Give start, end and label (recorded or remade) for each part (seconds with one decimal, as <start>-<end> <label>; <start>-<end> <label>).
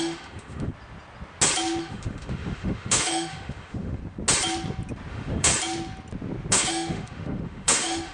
0.0-0.7 remade; 0.7-1.8 recorded; 1.8-4.0 remade; 4.0-5.1 recorded; 5.1-5.5 remade; 5.5-6.5 recorded; 6.5-8.1 remade